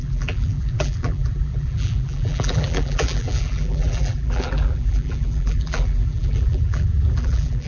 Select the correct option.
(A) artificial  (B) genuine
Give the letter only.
A